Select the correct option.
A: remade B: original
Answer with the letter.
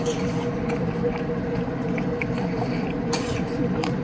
A